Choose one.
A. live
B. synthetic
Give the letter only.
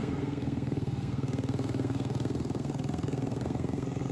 B